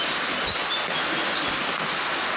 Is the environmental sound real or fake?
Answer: real